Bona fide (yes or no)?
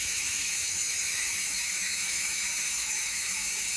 no